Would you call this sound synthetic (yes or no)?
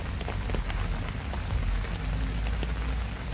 no